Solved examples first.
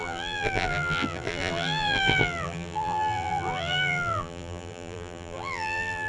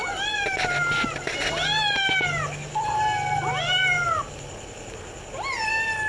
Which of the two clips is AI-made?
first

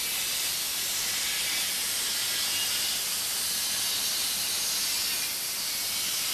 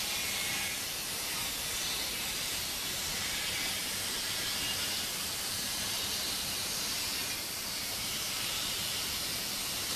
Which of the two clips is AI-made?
second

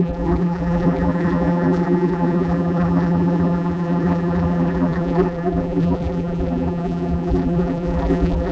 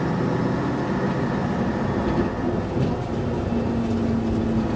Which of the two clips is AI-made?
first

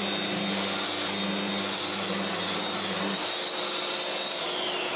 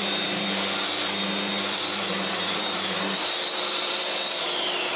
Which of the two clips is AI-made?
second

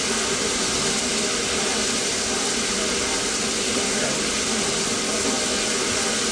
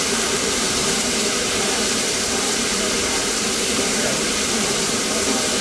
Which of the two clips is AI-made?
second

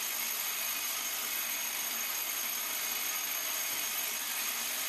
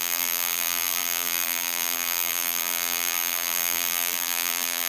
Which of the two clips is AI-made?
second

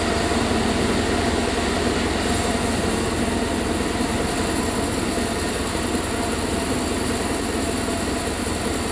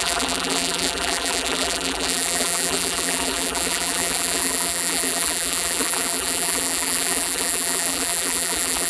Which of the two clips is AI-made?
second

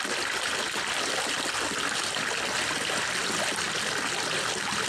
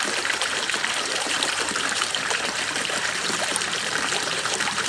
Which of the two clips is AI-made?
second